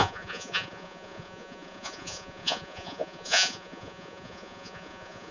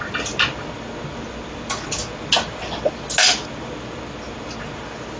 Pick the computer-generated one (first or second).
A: first